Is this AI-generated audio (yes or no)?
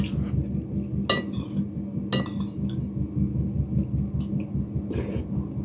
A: no